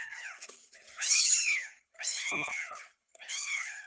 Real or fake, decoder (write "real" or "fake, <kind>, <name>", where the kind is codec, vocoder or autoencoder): fake, codec, HILCodec